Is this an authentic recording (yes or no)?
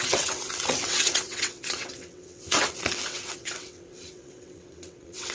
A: no